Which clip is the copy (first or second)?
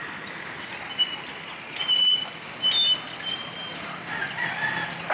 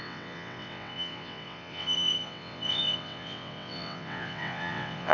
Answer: second